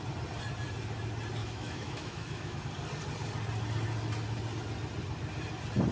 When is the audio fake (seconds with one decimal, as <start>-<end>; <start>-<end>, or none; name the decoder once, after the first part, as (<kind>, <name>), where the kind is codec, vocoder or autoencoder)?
1.4-2.6 (autoencoder, DAC-VAE)